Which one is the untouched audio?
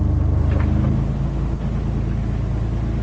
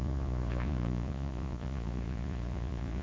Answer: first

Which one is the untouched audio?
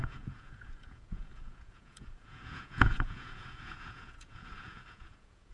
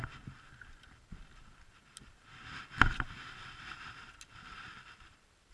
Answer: second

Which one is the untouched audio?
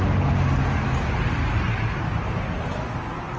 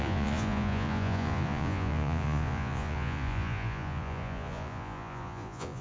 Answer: first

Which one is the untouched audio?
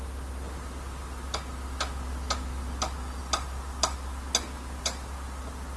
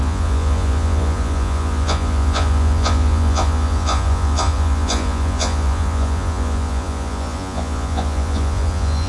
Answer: first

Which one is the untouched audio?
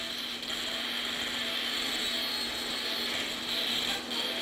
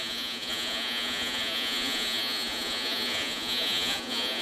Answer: first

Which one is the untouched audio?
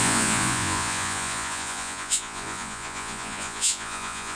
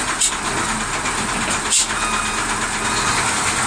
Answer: second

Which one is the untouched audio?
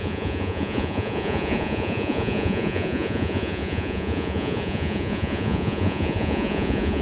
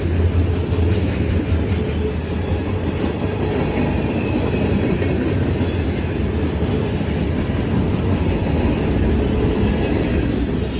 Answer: second